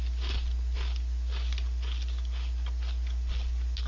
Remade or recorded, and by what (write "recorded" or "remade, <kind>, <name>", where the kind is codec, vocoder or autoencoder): recorded